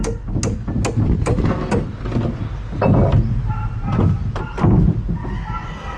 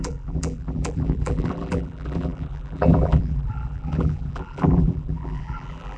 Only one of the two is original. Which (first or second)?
first